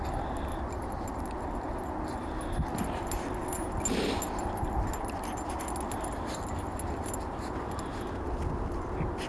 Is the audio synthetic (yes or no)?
no